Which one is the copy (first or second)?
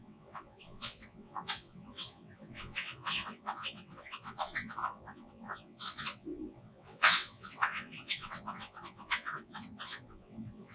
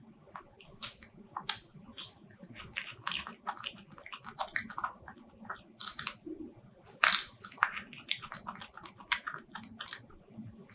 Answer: first